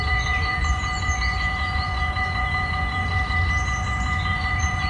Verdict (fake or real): fake